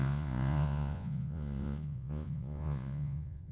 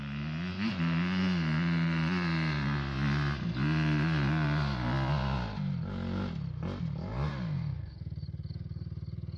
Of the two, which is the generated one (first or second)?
first